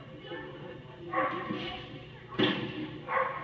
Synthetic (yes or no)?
no